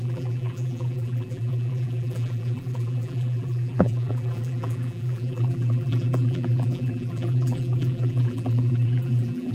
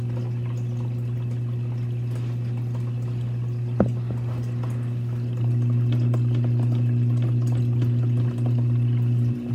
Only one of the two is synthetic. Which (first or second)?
first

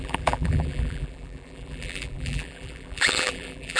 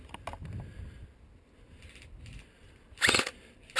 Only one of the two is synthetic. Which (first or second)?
first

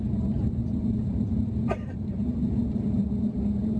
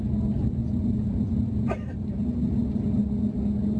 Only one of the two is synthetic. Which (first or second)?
first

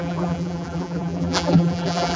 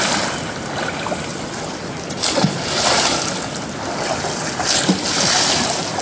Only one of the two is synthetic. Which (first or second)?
first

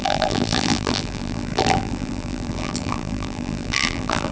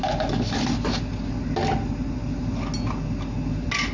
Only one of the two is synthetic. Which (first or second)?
first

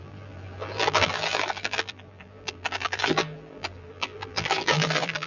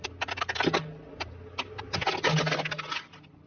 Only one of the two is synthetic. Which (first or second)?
first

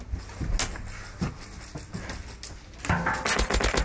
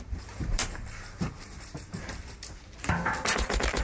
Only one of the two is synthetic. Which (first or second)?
second